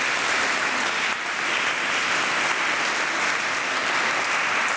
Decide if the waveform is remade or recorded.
recorded